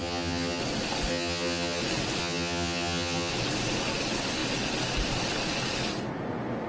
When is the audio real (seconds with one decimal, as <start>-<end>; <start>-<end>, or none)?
0.6-1.1; 1.8-2.2; 3.3-6.7